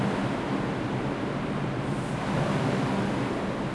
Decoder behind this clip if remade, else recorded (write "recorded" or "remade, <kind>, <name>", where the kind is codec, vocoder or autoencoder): recorded